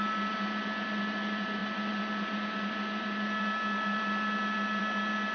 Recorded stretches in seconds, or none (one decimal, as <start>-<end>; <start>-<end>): 0.0-5.3